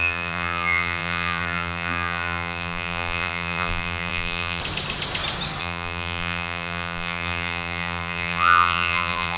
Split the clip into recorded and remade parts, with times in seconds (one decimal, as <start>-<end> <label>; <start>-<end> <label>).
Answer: 0.0-4.6 remade; 4.6-5.6 recorded; 5.6-9.4 remade